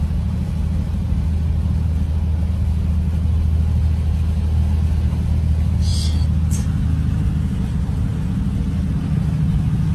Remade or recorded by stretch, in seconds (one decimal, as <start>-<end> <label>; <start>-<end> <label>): 0.0-9.9 recorded